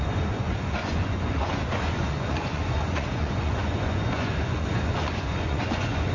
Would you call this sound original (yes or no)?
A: no